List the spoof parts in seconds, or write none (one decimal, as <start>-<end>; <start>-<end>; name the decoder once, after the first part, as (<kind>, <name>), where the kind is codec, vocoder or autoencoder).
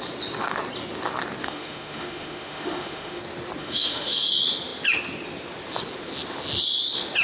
1.4-3.2 (autoencoder, DAC-VAE); 3.6-4.3